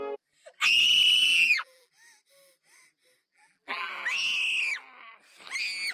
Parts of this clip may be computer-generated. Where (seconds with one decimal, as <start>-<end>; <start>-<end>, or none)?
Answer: 1.2-1.9; 3.3-3.9